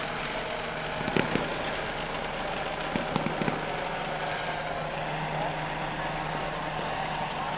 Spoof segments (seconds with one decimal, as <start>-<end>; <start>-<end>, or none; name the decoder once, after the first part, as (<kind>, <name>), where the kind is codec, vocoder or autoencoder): none